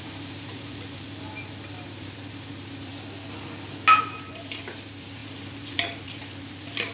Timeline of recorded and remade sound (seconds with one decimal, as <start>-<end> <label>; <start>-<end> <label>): 0.0-2.9 remade; 2.9-4.0 recorded; 4.0-6.9 remade